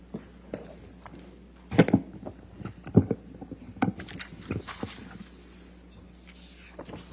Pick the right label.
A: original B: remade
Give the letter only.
A